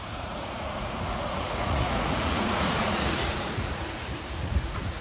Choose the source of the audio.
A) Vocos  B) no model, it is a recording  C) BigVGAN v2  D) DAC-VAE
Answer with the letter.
A